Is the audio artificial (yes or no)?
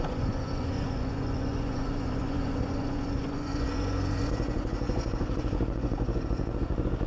yes